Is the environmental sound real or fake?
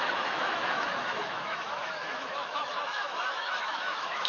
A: fake